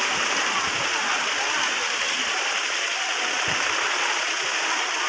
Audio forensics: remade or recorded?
recorded